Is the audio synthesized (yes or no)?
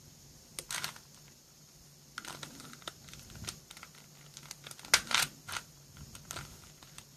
no